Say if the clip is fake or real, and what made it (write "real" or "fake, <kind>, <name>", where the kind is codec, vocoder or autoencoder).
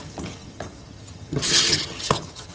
fake, vocoder, HiFi-GAN